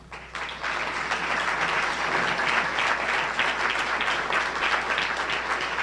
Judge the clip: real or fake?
real